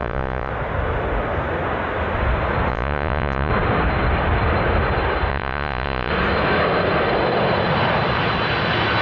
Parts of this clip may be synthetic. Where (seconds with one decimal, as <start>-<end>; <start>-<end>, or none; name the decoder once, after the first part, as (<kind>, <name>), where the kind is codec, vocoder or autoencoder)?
0.0-0.5 (vocoder, Vocos); 2.7-3.5; 5.3-6.1